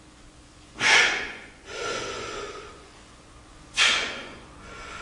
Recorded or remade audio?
remade